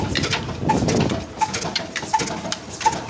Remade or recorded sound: recorded